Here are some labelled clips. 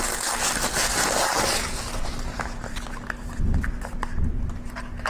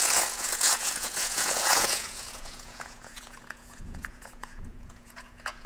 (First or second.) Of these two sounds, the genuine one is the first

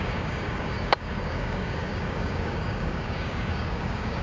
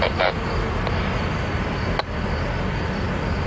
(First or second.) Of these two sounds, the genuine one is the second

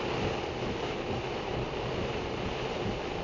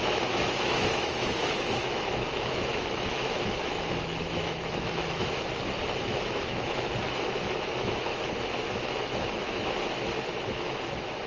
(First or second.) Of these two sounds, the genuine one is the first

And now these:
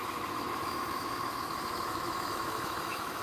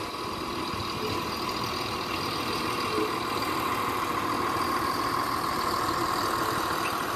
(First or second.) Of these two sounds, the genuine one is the second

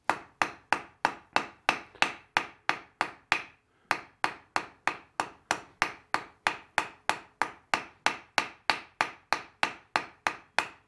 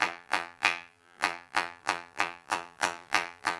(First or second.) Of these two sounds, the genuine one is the first